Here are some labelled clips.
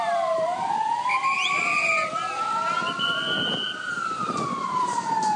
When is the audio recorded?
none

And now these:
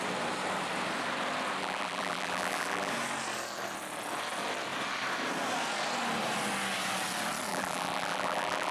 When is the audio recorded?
0.0-1.6; 2.9-7.5

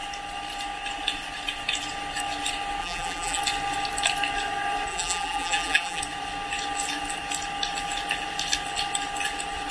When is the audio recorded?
0.0-2.8; 3.4-4.9; 6.0-9.7

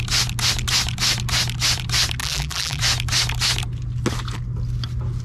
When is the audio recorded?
0.0-2.2; 2.8-5.2

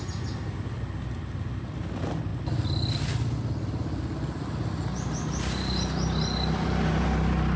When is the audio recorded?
0.0-7.6

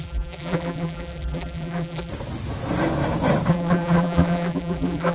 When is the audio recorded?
2.1-3.5

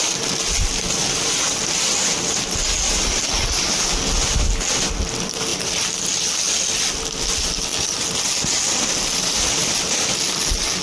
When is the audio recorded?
0.7-10.8

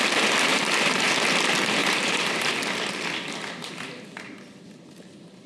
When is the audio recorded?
0.0-0.5; 1.1-1.8; 2.5-5.5